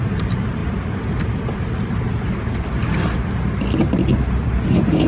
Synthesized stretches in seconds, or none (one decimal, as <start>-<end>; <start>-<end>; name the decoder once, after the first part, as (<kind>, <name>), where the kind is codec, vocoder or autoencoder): 0.0-0.6 (vocoder, BigVGAN v2); 2.2-2.8; 3.8-5.1